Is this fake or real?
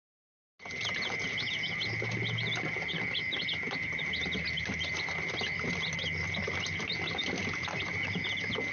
real